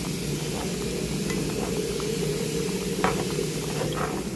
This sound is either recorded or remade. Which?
recorded